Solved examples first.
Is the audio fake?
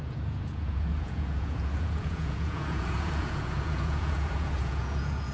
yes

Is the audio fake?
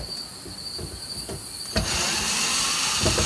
no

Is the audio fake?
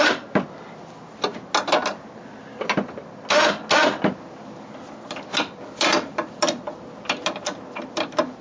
no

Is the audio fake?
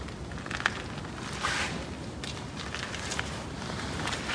no